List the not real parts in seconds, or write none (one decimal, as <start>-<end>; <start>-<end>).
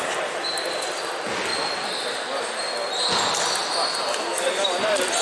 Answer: 0.0-1.5; 2.4-3.6; 4.5-5.2